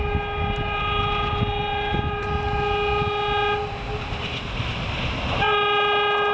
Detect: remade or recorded recorded